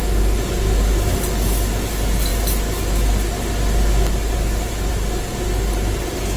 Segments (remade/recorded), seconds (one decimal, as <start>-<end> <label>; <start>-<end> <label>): 0.0-6.4 recorded